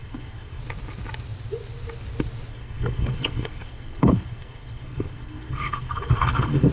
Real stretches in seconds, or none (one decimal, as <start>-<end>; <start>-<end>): 0.6-2.5